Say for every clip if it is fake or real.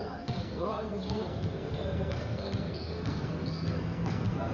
fake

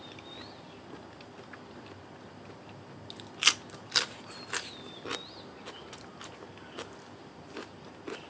real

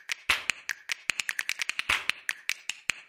real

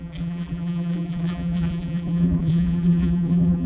fake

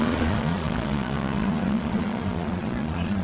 fake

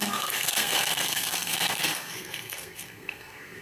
fake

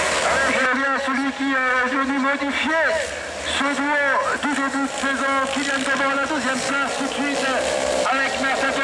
real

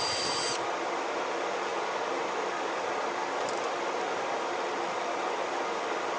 real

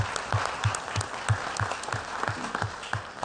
real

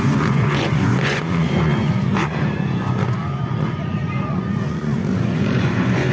fake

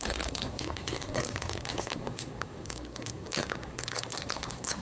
fake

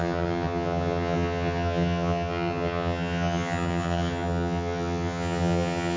fake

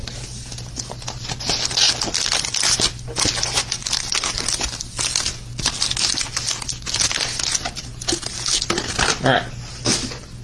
real